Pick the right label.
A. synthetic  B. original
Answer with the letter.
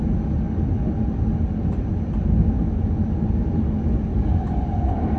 B